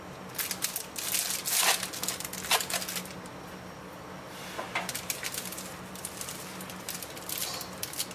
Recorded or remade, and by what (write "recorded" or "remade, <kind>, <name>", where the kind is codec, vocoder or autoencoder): recorded